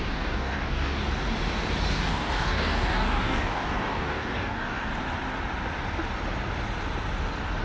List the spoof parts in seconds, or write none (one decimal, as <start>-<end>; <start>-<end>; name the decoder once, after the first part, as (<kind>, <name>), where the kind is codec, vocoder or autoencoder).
0.0-1.0 (codec, DAC); 1.9-4.9